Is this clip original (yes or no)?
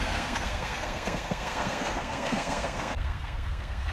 no